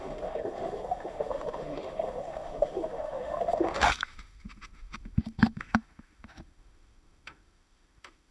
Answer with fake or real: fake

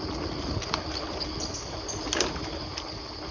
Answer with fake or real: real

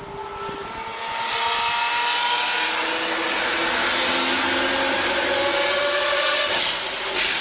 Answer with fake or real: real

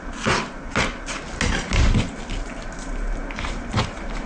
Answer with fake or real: real